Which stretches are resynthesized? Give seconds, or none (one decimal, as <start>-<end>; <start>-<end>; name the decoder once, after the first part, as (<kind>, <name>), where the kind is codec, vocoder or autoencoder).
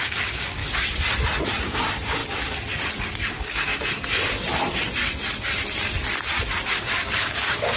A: 0.0-0.6 (codec, DAC); 1.6-2.2; 3.3-3.7; 6.7-7.8